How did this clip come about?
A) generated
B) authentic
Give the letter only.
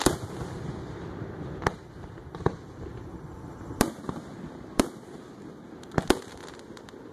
B